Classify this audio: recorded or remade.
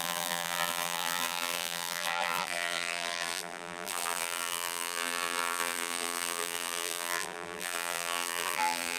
remade